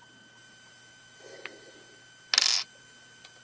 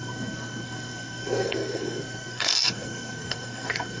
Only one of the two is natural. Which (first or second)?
first